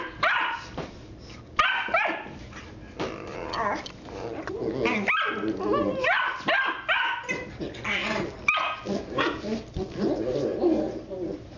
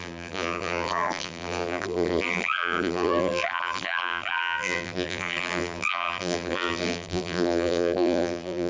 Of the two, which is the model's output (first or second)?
second